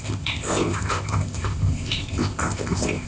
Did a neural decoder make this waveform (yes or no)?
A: yes